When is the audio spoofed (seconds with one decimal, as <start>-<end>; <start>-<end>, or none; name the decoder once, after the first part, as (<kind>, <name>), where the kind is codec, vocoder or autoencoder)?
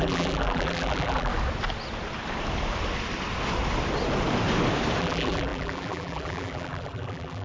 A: 0.0-1.3 (vocoder, BigVGAN v2); 5.0-7.4